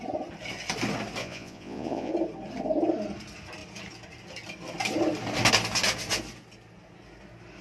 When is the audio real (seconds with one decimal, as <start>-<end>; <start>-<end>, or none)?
0.0-1.2; 2.1-7.6

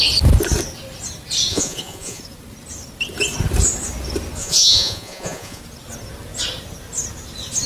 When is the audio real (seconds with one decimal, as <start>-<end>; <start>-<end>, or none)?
0.0-1.5; 2.2-4.4; 5.6-7.7